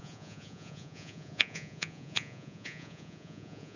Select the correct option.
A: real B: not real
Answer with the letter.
B